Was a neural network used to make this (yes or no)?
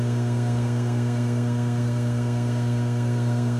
yes